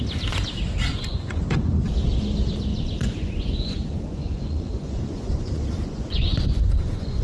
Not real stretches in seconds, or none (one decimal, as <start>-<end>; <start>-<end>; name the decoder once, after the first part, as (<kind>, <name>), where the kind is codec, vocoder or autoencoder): 0.9-1.8 (vocoder, Vocos); 2.7-7.2